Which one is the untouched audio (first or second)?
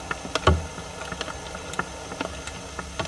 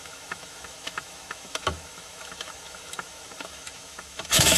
first